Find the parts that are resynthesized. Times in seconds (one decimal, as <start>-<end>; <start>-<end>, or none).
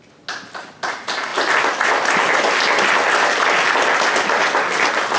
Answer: none